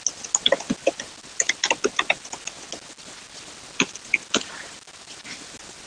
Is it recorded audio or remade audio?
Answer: recorded